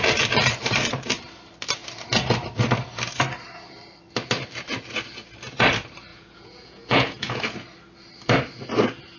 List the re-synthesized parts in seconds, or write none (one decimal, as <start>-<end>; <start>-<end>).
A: 6.1-7.4

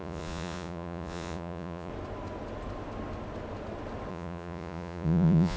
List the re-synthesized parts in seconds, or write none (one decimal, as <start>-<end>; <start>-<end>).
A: 0.0-1.9; 4.1-5.6